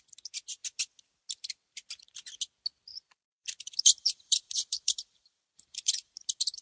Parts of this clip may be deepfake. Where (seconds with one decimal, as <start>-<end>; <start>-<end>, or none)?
2.9-6.1

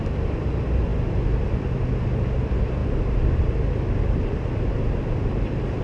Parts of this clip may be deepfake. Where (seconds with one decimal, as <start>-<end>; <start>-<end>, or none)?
0.9-1.7; 2.8-4.4

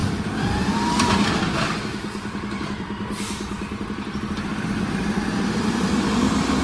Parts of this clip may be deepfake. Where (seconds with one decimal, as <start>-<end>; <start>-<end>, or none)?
0.0-6.6

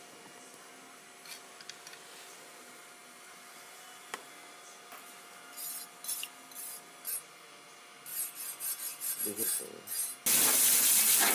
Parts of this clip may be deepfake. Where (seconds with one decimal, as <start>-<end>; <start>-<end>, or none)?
none

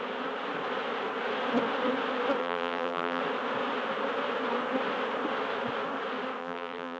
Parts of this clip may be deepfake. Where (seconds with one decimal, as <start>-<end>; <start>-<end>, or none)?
2.4-3.2; 6.4-7.0

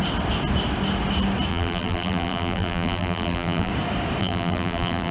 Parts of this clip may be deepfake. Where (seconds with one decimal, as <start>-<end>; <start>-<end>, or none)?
1.5-3.7; 4.2-5.1

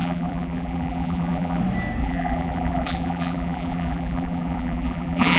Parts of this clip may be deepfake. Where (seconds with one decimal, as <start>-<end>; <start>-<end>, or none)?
0.0-1.6; 2.0-5.4

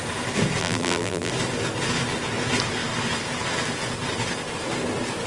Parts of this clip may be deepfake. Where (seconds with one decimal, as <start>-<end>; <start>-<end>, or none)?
0.6-1.3